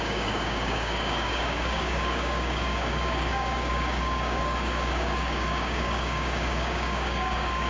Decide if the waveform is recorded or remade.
remade